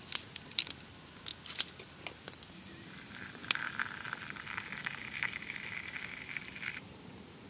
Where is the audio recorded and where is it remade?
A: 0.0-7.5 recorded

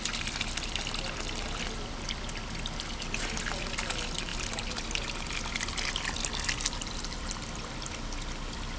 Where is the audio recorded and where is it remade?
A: 0.0-8.8 recorded